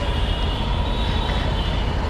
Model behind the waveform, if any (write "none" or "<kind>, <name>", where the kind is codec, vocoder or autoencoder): none